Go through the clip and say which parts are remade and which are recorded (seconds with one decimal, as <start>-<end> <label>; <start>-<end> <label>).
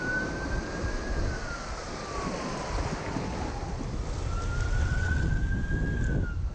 0.0-4.8 recorded; 4.8-5.4 remade; 5.4-6.5 recorded